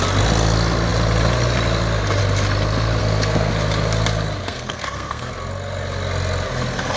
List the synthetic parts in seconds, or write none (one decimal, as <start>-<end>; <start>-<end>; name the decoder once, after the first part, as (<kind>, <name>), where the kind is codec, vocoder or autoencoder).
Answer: 3.0-3.5 (codec, SNAC); 4.4-5.3